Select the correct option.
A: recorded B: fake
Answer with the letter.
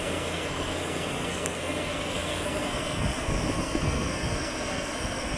B